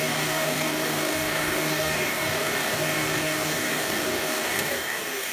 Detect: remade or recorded remade